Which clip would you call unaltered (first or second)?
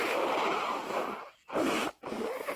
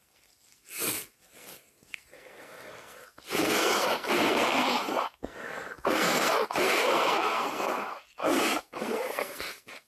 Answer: first